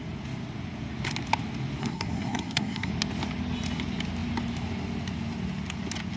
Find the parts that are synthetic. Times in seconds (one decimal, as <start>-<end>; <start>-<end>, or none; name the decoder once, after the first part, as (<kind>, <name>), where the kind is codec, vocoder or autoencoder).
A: 1.8-2.9 (codec, SNAC)